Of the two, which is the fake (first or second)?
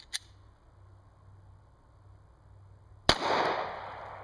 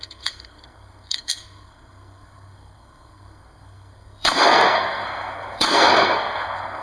second